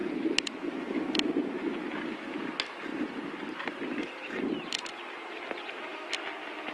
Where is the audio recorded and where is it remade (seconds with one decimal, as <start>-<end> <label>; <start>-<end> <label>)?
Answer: 0.0-6.7 recorded